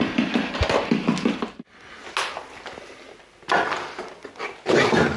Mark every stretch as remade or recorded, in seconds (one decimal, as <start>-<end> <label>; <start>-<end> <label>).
0.0-5.2 recorded

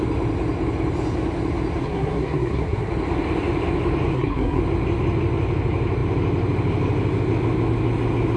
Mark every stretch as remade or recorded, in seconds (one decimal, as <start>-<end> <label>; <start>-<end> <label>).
0.0-1.8 recorded; 1.8-2.9 remade; 2.9-4.1 recorded; 4.1-4.6 remade; 4.6-8.4 recorded

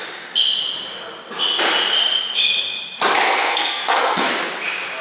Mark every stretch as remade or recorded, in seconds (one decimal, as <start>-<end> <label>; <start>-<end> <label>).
0.0-3.3 recorded; 3.3-4.4 remade; 4.4-5.0 recorded

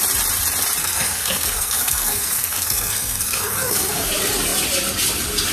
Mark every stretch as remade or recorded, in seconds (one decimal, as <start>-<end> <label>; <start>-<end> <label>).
0.0-0.8 recorded; 0.8-4.1 remade; 4.1-5.5 recorded

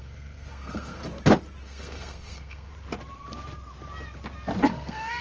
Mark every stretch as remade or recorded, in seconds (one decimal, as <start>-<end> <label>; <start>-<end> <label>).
0.0-1.0 remade; 1.0-1.6 recorded; 1.6-2.7 remade; 2.7-4.7 recorded; 4.7-5.2 remade

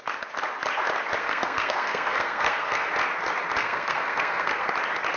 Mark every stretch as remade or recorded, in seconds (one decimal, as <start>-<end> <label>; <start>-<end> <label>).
0.0-1.2 recorded; 1.2-2.9 remade; 2.9-3.6 recorded; 3.6-4.7 remade; 4.7-5.2 recorded